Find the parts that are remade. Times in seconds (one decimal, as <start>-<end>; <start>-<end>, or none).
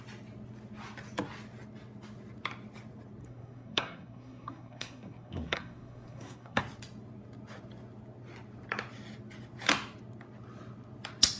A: 3.2-6.6